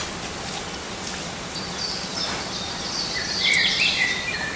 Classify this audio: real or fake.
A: real